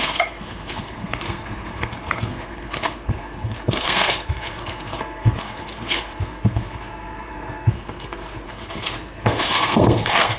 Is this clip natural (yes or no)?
no